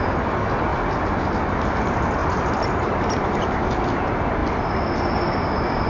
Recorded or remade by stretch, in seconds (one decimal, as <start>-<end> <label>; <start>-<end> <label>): 0.0-0.7 recorded; 0.7-1.3 remade; 1.3-2.2 recorded; 2.2-3.4 remade; 3.4-5.9 recorded